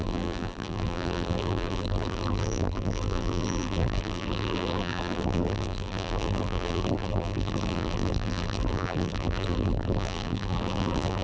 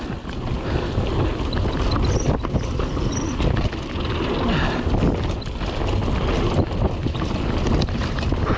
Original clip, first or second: second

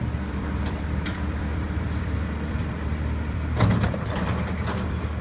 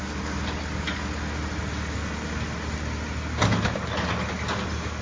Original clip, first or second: second